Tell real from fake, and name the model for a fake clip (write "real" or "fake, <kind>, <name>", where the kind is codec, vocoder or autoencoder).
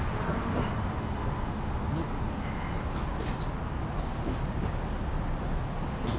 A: real